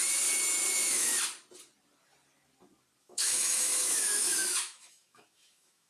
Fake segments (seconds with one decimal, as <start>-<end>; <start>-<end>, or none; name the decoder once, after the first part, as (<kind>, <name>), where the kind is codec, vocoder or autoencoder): 0.7-1.1 (autoencoder, DAC-VAE); 3.0-5.9